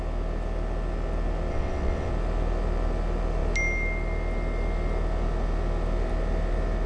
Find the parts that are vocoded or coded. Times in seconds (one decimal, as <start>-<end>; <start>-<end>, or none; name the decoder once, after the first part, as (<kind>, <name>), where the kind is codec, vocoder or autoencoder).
1.5-2.1 (vocoder, WaveNeXt)